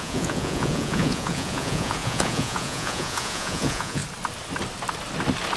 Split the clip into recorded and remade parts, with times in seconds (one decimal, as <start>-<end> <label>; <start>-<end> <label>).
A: 0.0-4.0 remade; 4.0-5.6 recorded